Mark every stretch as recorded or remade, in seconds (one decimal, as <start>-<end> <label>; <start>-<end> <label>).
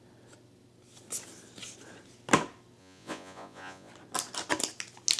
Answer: 0.0-2.8 recorded; 2.8-3.9 remade; 3.9-5.2 recorded